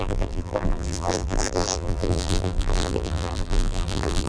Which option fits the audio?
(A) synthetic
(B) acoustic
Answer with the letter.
A